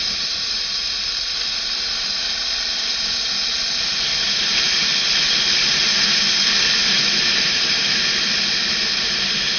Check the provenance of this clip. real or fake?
real